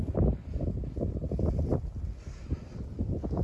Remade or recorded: recorded